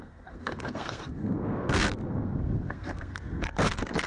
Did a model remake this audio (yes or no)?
yes